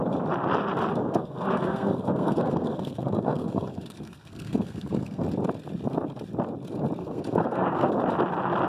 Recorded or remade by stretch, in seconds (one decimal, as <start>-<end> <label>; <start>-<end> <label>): 0.0-1.0 recorded; 1.0-5.2 remade; 5.2-7.0 recorded; 7.0-7.9 remade; 7.9-8.7 recorded